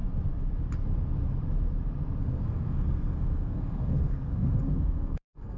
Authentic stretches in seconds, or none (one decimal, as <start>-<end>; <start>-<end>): 0.0-2.2

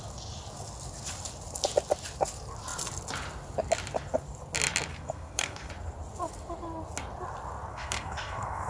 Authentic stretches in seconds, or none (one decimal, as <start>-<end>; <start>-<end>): 0.0-4.9; 5.7-7.7

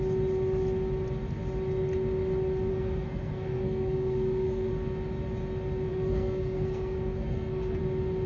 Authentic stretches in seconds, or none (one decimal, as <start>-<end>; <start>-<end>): 0.0-2.7; 4.7-5.9; 7.8-8.3

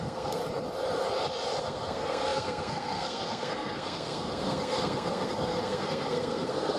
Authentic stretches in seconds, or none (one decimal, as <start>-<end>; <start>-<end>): 0.4-1.6